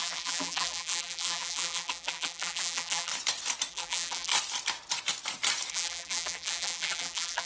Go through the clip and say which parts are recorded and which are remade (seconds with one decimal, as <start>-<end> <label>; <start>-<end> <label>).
0.0-3.1 remade; 3.1-3.7 recorded; 3.7-4.3 remade; 4.3-5.7 recorded; 5.7-7.5 remade

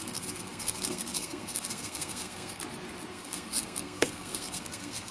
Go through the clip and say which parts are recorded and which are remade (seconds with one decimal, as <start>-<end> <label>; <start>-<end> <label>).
0.0-2.6 remade; 2.6-3.1 recorded; 3.1-5.1 remade